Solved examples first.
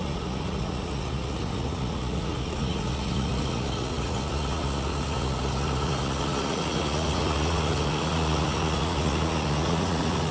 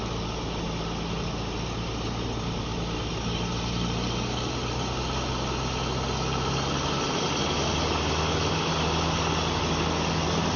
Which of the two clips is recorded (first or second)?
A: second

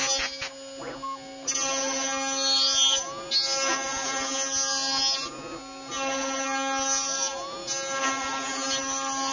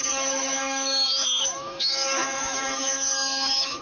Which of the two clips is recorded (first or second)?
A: first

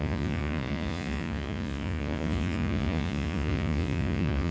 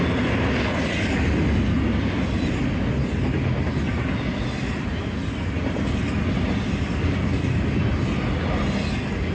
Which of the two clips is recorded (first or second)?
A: second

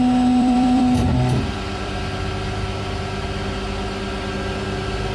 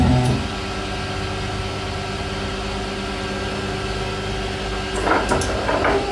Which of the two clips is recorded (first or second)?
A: second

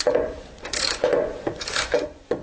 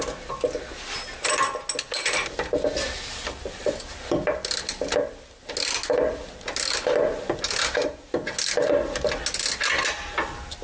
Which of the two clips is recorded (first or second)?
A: second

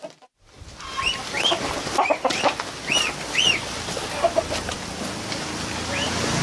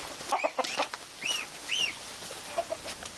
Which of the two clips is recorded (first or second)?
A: first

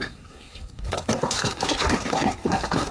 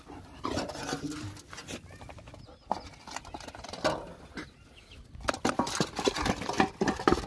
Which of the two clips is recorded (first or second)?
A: second